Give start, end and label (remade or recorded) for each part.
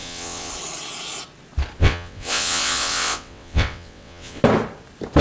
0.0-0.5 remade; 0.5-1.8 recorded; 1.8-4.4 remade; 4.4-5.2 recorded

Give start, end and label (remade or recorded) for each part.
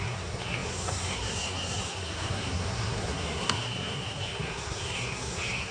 0.0-5.7 remade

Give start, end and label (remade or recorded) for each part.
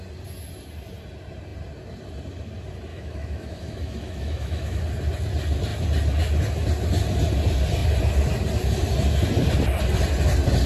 0.0-2.9 recorded; 2.9-4.8 remade; 4.8-10.7 recorded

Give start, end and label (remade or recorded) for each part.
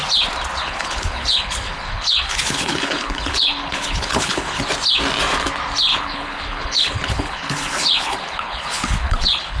0.0-0.6 recorded; 0.6-4.6 remade; 4.6-5.9 recorded; 5.9-9.6 remade